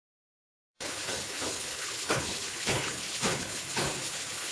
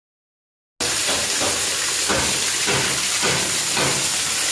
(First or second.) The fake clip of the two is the first